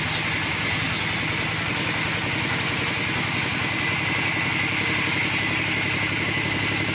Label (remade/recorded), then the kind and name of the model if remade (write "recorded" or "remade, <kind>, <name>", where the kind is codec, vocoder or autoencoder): recorded